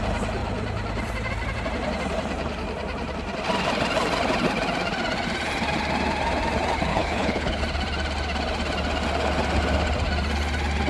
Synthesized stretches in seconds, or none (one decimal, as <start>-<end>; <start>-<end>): 6.9-7.6